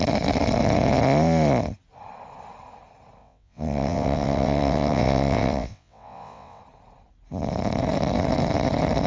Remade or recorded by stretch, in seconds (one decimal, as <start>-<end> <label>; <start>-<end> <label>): 0.0-3.2 recorded; 3.2-6.6 remade; 6.6-9.1 recorded